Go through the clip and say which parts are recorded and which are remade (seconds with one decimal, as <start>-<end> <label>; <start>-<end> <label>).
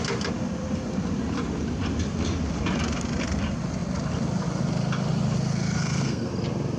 0.0-5.8 recorded; 5.8-6.3 remade; 6.3-6.8 recorded